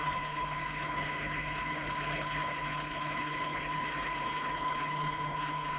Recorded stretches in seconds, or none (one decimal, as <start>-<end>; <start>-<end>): none